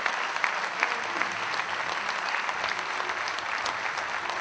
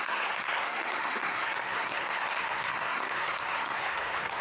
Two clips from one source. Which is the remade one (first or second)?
second